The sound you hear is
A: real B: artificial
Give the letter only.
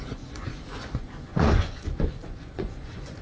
B